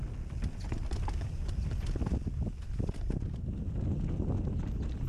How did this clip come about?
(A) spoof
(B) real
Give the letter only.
B